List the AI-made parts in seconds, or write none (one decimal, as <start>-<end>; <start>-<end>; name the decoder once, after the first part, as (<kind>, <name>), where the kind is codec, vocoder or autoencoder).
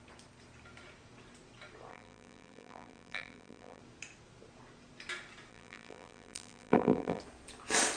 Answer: 1.9-3.8 (vocoder, BigVGAN v2); 5.5-7.2